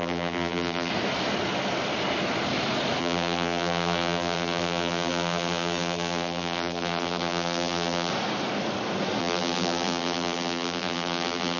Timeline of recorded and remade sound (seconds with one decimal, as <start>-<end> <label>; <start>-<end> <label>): 0.0-0.9 remade; 0.9-3.0 recorded; 3.0-8.1 remade; 8.1-9.2 recorded; 9.2-11.6 remade